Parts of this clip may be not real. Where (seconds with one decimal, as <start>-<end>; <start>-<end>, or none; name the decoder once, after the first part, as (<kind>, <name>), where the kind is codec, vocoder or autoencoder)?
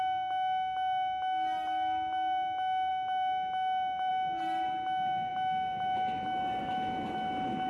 none